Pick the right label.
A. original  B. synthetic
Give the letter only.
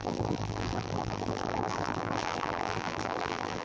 B